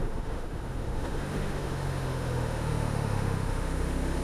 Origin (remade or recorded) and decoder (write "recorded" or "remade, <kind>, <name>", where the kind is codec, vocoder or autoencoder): remade, autoencoder, DAC-VAE